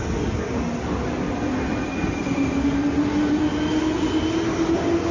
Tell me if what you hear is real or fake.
real